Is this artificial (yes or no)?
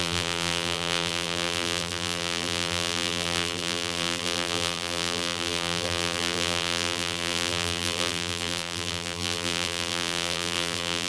yes